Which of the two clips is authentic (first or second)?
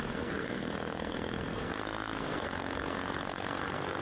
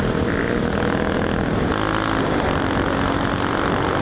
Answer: second